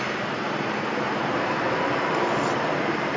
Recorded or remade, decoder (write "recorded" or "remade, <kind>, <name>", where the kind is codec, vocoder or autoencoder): remade, vocoder, BigVGAN v2